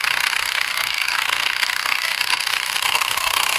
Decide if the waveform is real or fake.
fake